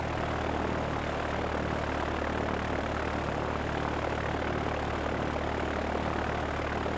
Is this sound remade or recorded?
recorded